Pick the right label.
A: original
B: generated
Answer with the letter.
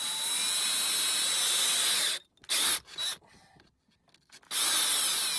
A